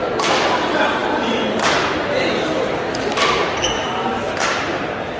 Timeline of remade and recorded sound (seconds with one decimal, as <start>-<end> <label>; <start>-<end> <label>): 0.0-5.2 remade